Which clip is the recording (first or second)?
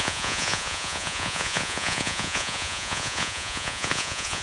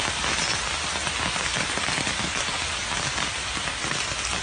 second